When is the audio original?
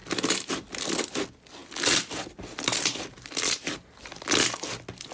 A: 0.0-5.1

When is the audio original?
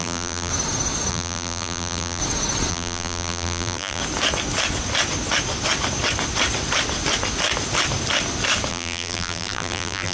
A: 0.5-1.1; 2.2-2.7; 4.0-8.7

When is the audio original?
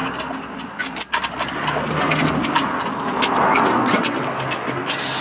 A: 0.0-3.8; 4.3-5.2